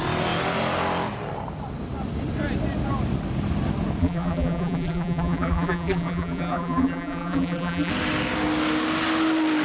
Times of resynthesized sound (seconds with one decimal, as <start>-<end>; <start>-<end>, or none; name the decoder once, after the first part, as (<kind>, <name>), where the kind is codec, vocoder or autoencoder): 4.0-7.9 (vocoder, BigVGAN v2)